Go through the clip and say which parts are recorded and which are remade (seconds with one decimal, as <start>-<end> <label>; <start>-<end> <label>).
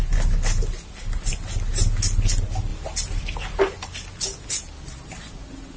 0.0-5.8 recorded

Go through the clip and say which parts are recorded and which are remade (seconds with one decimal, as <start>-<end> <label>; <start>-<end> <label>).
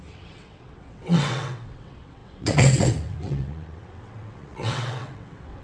0.0-5.6 remade